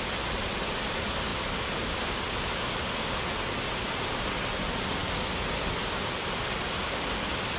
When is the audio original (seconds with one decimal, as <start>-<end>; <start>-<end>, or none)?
0.0-7.6

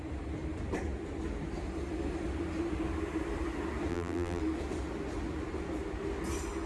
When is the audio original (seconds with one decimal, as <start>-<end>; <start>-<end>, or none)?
0.0-3.9; 4.4-6.7

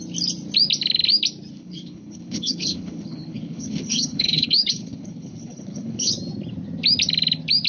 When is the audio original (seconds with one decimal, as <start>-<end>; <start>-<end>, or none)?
0.0-1.5; 6.1-7.7

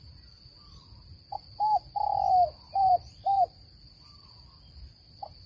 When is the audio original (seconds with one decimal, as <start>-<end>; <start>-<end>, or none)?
0.5-2.8

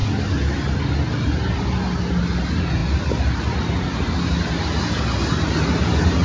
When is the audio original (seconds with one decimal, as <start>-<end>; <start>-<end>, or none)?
0.0-6.2